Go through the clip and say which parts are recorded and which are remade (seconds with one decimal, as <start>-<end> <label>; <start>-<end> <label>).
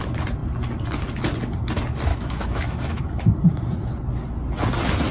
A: 0.0-2.1 recorded; 2.1-3.0 remade; 3.0-5.1 recorded